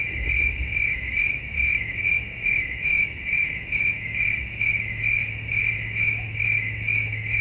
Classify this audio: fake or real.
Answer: fake